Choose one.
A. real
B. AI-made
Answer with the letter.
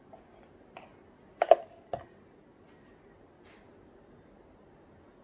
A